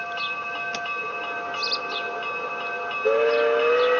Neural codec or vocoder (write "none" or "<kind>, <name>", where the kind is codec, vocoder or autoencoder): none